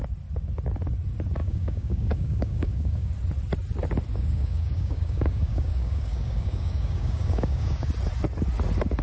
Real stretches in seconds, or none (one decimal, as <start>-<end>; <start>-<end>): 0.0-1.4; 3.1-4.1; 7.9-9.0